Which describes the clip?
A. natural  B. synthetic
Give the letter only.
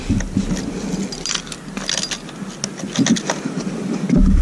A